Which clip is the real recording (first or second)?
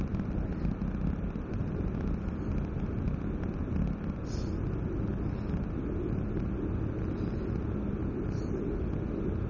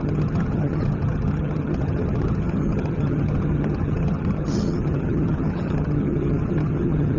first